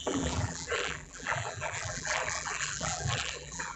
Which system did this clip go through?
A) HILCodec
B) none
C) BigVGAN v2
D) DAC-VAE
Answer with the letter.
C